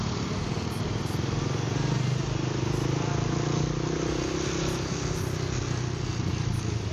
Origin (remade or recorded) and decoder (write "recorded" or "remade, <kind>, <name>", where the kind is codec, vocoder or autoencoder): recorded